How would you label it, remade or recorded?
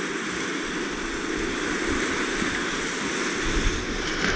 recorded